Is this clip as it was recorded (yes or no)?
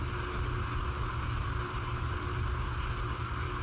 yes